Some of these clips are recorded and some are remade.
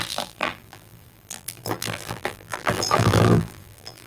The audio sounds remade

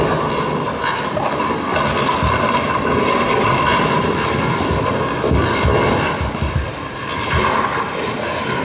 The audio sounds recorded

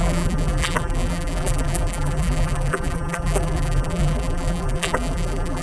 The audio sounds remade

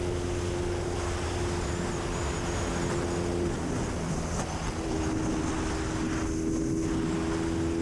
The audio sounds recorded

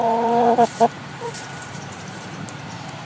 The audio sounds remade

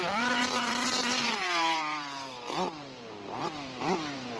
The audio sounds remade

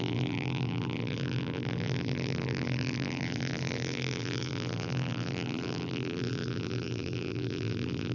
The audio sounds remade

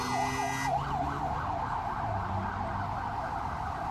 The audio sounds recorded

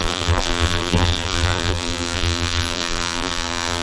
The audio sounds remade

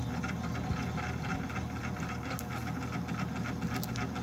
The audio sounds recorded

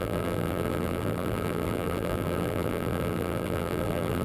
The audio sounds remade